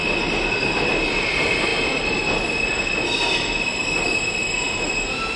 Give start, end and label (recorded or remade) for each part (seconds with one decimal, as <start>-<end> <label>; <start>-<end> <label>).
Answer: 0.0-5.4 recorded

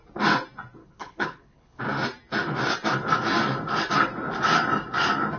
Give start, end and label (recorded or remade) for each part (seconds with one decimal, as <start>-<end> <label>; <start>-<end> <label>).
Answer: 0.0-0.8 recorded; 0.8-1.8 remade; 1.8-5.4 recorded